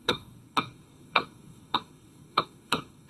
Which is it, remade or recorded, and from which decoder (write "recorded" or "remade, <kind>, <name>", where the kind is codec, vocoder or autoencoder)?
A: remade, codec, SNAC